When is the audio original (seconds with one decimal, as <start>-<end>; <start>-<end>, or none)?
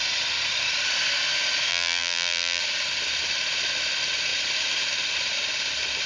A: 0.0-1.7; 2.6-6.1